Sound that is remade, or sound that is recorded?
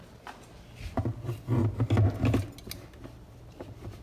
recorded